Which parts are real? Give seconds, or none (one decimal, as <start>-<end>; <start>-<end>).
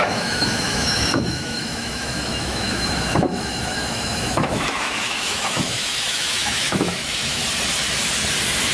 7.4-8.7